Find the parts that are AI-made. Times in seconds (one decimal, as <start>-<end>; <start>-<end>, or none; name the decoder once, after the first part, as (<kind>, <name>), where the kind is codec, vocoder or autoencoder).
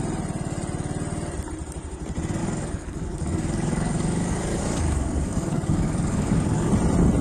2.4-6.7 (codec, DAC)